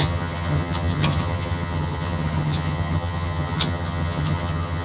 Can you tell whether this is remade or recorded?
remade